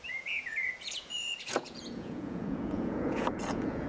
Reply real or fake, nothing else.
fake